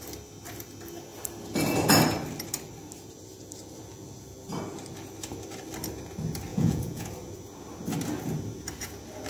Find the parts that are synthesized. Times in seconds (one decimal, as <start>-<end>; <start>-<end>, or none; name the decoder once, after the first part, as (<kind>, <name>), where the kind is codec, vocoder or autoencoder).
6.5-7.1 (vocoder, Vocos)